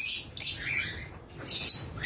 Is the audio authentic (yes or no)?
yes